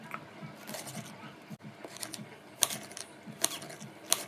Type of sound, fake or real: real